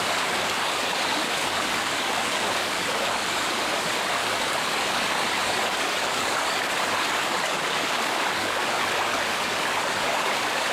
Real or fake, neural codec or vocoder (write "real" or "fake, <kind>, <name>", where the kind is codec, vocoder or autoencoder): fake, codec, DAC